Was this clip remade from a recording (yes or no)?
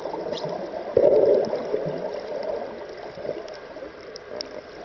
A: no